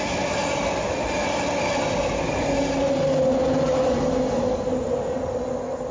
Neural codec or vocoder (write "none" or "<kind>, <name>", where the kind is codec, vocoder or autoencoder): none